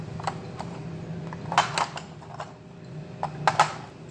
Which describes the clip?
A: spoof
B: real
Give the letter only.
B